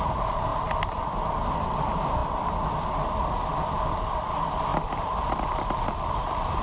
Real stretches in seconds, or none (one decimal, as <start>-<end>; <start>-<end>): 0.0-6.6